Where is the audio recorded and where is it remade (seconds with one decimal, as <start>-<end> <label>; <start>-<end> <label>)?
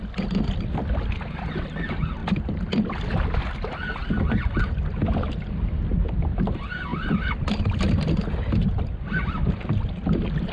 0.0-2.2 recorded; 2.2-3.1 remade; 3.1-5.9 recorded; 5.9-6.5 remade; 6.5-10.5 recorded